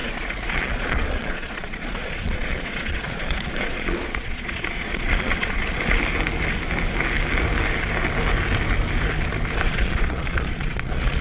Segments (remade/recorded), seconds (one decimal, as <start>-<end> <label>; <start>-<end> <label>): 0.0-5.6 remade; 5.6-9.7 recorded; 9.7-11.2 remade